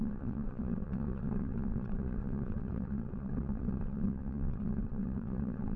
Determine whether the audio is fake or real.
fake